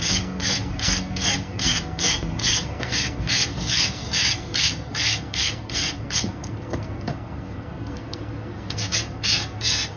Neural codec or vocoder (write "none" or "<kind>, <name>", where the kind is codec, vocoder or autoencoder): codec, SNAC